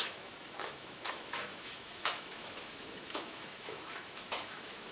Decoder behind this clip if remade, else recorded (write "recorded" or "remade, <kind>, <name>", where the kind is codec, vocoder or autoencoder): remade, autoencoder, DAC-VAE